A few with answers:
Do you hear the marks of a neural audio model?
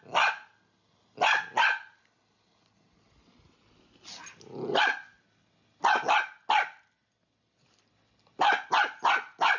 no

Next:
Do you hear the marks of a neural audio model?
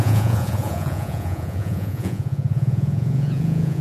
yes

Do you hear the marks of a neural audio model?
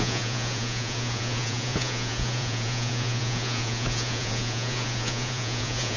yes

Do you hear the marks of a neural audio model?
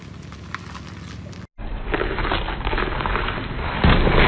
no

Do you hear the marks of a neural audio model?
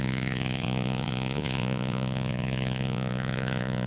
yes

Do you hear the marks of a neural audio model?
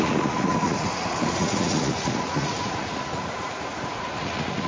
yes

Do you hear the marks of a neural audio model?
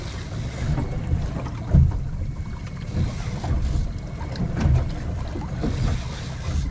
no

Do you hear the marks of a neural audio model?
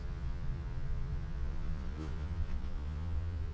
yes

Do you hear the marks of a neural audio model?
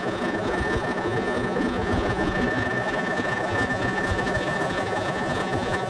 yes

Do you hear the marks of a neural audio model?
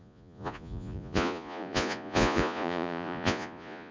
yes